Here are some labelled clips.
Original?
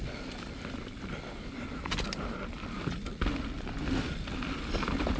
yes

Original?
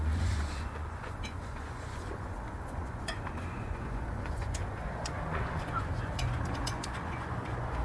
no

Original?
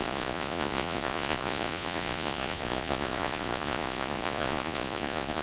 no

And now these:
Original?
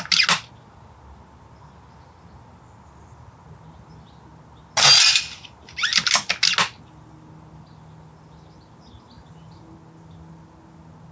yes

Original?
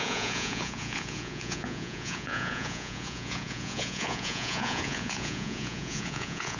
no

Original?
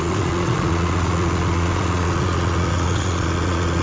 no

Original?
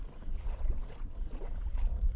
no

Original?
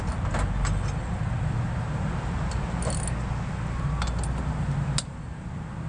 yes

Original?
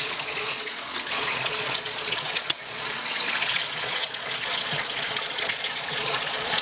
no